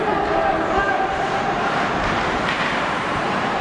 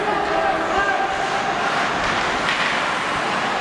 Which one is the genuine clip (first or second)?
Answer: second